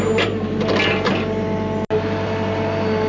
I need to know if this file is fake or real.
real